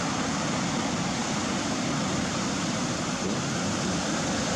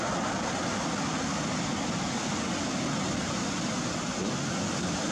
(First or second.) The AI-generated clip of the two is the first